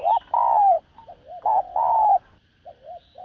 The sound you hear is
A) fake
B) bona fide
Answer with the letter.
A